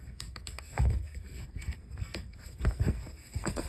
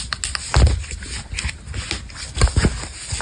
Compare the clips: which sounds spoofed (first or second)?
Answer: first